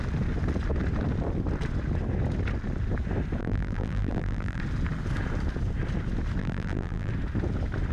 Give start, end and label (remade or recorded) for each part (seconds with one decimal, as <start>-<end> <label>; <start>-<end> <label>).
0.0-3.4 recorded; 3.4-4.6 remade; 4.6-6.4 recorded; 6.4-7.1 remade; 7.1-7.9 recorded